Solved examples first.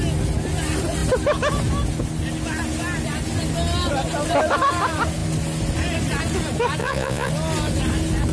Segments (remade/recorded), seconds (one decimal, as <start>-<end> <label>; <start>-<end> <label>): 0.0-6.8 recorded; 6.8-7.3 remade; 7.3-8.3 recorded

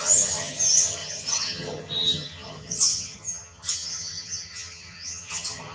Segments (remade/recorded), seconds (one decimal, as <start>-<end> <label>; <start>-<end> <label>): 0.0-5.7 remade

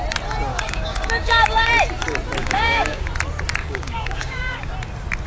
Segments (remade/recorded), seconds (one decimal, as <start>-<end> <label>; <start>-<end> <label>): 0.0-0.5 recorded; 0.5-1.7 remade; 1.7-2.4 recorded; 2.4-3.1 remade; 3.1-3.6 recorded; 3.6-4.7 remade; 4.7-5.3 recorded

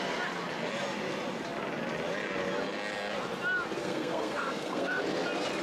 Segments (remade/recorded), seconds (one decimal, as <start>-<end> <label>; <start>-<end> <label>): 0.0-3.8 recorded; 3.8-5.0 remade; 5.0-5.6 recorded

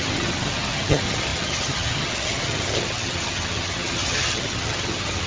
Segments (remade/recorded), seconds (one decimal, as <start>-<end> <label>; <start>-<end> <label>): 0.0-5.3 remade

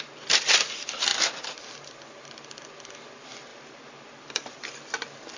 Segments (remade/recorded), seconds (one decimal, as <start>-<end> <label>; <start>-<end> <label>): 0.0-1.1 remade; 1.1-2.3 recorded; 2.3-5.4 remade

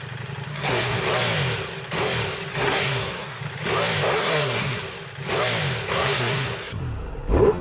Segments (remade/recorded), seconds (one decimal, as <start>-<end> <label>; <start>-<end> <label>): 0.0-0.5 recorded; 0.5-1.0 remade; 1.0-2.5 recorded; 2.5-3.4 remade; 3.4-4.2 recorded; 4.2-4.8 remade; 4.8-5.9 recorded; 5.9-6.8 remade; 6.8-7.6 recorded

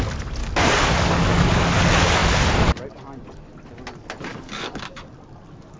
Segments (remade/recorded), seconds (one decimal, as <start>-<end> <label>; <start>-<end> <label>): 0.0-0.4 recorded; 0.4-1.5 remade; 1.5-4.3 recorded; 4.3-5.0 remade; 5.0-5.8 recorded